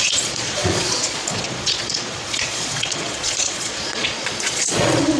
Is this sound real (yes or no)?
no